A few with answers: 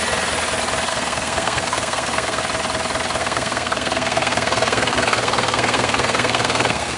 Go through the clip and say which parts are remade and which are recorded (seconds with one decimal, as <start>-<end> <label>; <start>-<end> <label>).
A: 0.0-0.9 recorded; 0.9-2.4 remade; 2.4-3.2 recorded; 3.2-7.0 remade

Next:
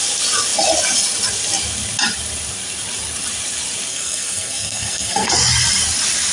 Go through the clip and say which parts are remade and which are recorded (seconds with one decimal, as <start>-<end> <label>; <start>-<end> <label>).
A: 0.0-3.9 recorded; 3.9-5.3 remade; 5.3-6.3 recorded

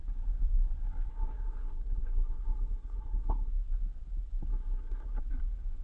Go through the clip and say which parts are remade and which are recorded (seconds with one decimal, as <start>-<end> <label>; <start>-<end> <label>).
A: 0.0-1.1 recorded; 1.1-3.5 remade; 3.5-4.5 recorded; 4.5-5.2 remade; 5.2-5.8 recorded

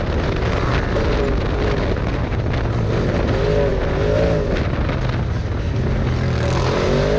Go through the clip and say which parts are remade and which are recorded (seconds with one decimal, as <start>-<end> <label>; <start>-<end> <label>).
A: 0.0-7.2 recorded

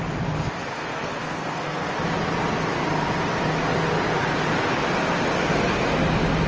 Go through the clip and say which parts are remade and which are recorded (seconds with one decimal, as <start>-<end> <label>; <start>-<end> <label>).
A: 0.0-0.7 recorded; 0.7-1.9 remade; 1.9-6.5 recorded